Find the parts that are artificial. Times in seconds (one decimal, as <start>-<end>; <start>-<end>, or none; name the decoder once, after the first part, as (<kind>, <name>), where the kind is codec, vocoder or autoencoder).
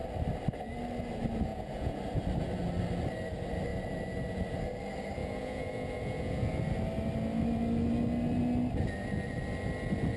1.5-2.0 (vocoder, Vocos); 5.2-6.5